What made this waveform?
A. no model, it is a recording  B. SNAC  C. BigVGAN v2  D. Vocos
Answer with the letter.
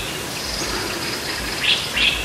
A